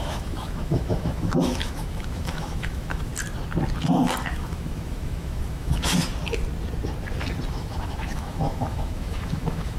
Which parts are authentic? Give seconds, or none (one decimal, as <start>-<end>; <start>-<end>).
3.1-4.3; 5.9-7.5